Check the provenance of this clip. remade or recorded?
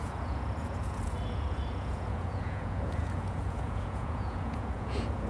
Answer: remade